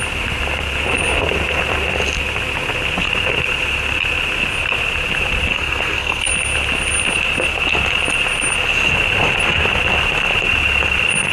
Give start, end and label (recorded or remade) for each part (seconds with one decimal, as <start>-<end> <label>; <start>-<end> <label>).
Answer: 0.0-5.5 recorded; 5.5-6.3 remade; 6.3-11.3 recorded